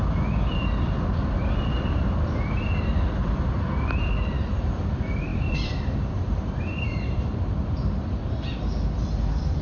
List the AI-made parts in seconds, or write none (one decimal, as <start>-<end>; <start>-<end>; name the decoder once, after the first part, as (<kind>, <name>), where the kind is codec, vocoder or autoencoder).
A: 0.0-9.6 (vocoder, BigVGAN v2)